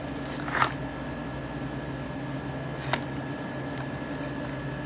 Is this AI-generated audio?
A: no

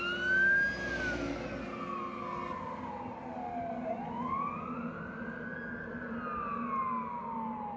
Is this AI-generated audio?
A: no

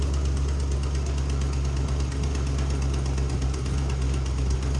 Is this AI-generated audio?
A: no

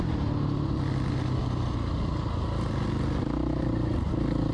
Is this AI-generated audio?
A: no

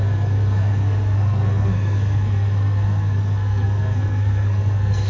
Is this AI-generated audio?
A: yes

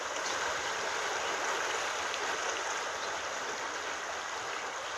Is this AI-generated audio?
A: no